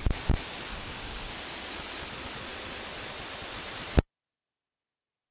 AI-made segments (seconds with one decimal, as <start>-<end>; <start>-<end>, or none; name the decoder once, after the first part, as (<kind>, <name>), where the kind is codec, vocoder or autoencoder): 0.7-1.3 (codec, DAC)